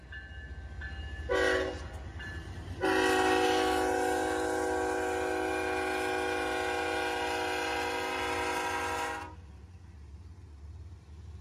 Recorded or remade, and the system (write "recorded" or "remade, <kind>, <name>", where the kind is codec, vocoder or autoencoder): recorded